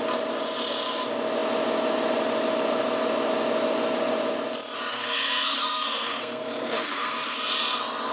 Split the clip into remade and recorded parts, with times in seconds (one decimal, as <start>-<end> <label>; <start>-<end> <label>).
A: 0.0-4.9 recorded; 4.9-7.4 remade; 7.4-8.1 recorded